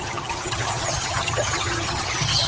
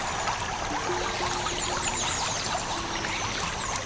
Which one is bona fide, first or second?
second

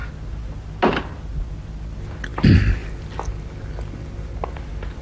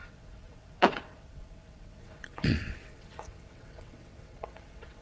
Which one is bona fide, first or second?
first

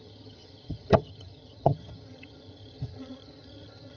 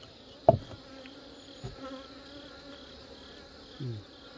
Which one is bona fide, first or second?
second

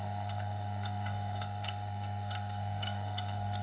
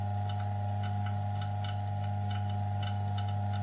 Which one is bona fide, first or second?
second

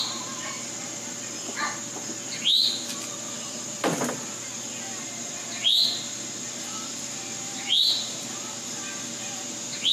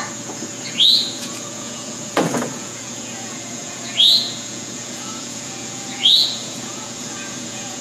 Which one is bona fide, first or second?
first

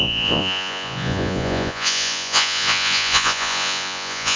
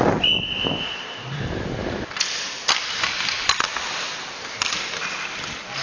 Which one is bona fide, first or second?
second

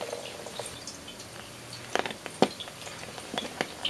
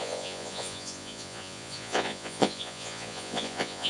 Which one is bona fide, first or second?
first